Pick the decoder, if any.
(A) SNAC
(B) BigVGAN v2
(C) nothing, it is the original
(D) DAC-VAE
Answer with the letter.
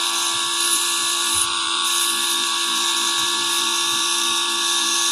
B